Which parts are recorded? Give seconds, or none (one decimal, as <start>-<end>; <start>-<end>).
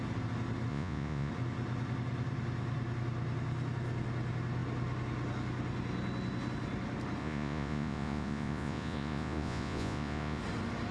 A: 0.0-0.7; 1.3-7.2; 10.4-10.9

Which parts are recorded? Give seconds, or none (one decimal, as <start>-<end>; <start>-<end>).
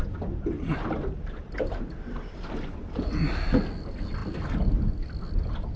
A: 0.0-5.8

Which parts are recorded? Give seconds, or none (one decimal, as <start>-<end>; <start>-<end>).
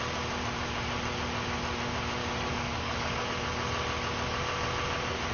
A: 0.0-2.2; 3.3-5.3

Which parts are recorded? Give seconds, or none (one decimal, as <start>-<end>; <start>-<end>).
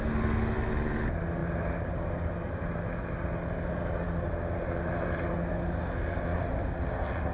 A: 0.0-7.3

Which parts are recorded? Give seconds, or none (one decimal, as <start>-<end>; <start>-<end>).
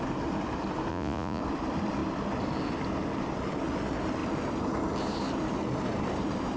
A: 0.0-0.9; 1.4-6.6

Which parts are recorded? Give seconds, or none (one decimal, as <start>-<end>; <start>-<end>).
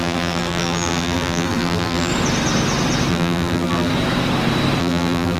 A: 2.1-3.1; 3.9-4.8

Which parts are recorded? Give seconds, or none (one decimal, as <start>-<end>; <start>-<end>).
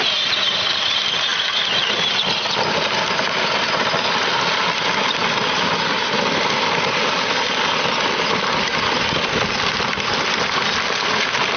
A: 0.0-11.6